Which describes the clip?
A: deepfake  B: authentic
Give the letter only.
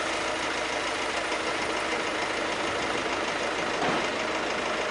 B